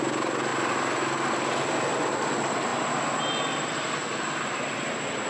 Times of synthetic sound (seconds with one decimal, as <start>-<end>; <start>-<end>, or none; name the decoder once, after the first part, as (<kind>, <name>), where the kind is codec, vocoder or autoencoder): none